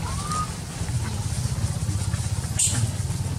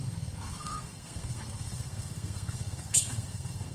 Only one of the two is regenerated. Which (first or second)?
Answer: second